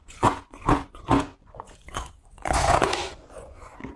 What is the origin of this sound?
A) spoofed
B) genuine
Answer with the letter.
A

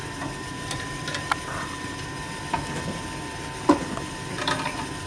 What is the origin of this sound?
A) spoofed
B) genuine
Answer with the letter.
A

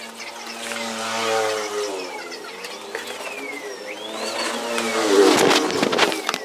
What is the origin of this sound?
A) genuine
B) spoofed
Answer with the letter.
A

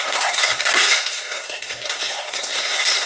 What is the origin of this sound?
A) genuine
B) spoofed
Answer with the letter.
B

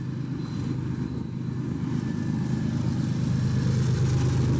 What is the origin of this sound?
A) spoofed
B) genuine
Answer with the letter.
B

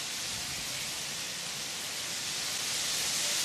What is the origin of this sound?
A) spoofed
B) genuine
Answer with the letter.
B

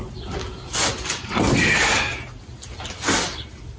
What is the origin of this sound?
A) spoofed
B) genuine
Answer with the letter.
B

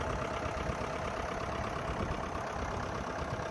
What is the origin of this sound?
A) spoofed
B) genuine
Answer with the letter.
B